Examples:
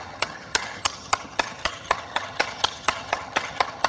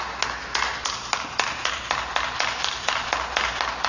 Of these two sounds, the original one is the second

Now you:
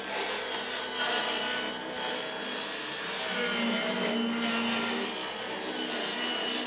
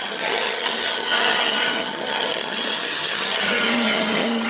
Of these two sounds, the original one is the first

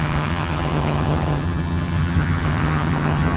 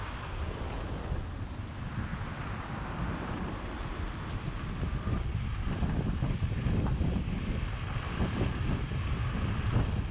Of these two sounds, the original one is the second